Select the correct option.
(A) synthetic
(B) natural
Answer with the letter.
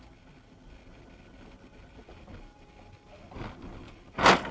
B